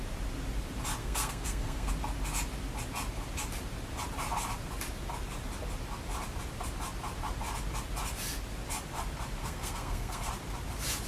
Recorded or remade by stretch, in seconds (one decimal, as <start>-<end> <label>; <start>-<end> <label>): 0.0-1.0 recorded; 1.0-1.9 remade; 1.9-9.4 recorded; 9.4-10.3 remade; 10.3-11.1 recorded